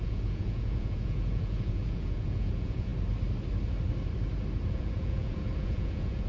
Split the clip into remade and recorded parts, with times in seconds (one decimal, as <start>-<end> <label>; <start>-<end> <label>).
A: 0.0-2.9 remade; 2.9-4.7 recorded; 4.7-6.3 remade